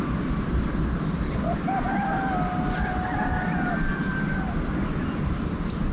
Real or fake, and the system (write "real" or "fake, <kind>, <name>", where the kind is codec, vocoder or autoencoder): real